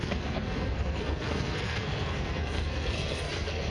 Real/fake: fake